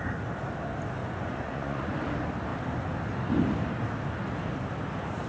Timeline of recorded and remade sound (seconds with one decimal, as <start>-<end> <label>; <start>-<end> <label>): 0.0-1.0 recorded; 1.0-2.0 remade; 2.0-5.3 recorded

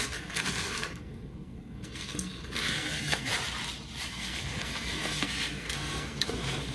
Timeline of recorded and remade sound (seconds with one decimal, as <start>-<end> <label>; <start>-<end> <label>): 0.0-3.3 remade; 3.3-4.1 recorded; 4.1-6.7 remade

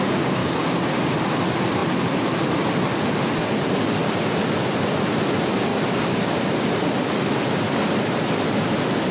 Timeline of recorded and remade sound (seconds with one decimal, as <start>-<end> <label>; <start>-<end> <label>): 0.0-0.4 recorded; 0.4-1.0 remade; 1.0-5.7 recorded; 5.7-6.3 remade; 6.3-9.1 recorded

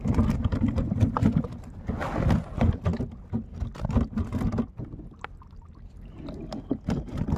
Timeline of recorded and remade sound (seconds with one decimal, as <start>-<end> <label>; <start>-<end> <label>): 0.0-7.4 recorded

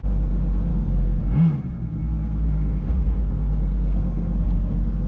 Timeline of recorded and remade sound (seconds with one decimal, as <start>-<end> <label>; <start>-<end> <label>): 0.0-0.7 recorded; 0.7-1.2 remade; 1.2-2.0 recorded; 2.0-5.1 remade